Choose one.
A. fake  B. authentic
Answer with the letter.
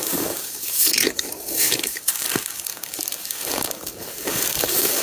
A